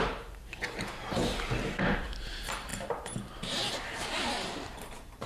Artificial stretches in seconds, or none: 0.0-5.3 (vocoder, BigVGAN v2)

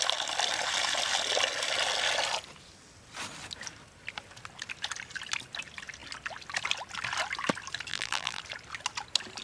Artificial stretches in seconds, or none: 7.9-8.4 (vocoder, BigVGAN v2)

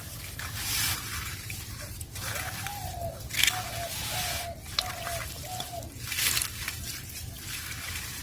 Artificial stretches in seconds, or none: 0.0-2.7 (vocoder, BigVGAN v2); 7.2-8.2

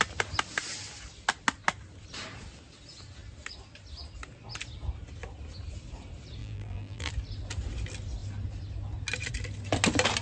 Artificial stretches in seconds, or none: 6.4-7.1 (vocoder, BigVGAN v2)

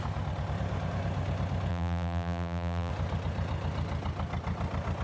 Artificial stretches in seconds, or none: 1.7-2.9 (vocoder, BigVGAN v2)

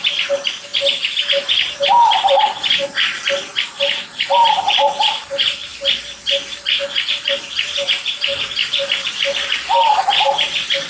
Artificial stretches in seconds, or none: 0.0-0.7 (vocoder, BigVGAN v2); 1.7-8.6; 9.1-10.9

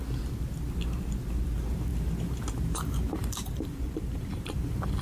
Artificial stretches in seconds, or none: 1.9-5.0 (vocoder, BigVGAN v2)

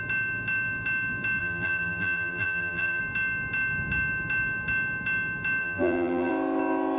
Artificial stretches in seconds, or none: 1.4-3.0 (vocoder, BigVGAN v2); 5.6-6.3